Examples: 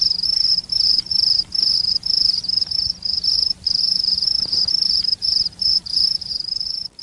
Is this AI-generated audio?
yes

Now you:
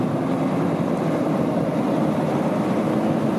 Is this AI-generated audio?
no